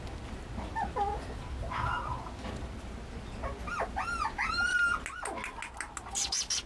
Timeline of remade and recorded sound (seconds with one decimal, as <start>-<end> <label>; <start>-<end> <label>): 0.0-6.7 recorded